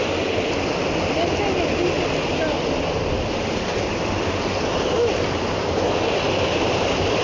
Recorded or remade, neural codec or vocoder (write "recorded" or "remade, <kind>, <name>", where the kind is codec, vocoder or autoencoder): recorded